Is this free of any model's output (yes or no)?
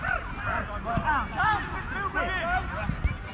yes